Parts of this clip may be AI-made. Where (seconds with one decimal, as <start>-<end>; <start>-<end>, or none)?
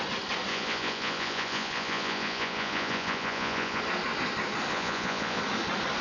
0.5-3.8; 4.7-5.4